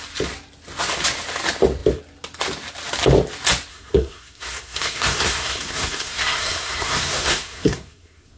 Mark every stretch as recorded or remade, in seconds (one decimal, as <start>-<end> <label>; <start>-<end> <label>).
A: 0.0-3.7 recorded; 3.7-8.4 remade